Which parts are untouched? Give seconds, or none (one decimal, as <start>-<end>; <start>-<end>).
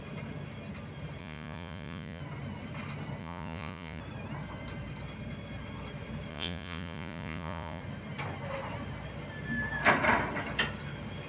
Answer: 0.0-1.2; 2.2-3.2; 4.0-6.3; 7.8-11.3